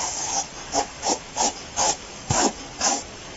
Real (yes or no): no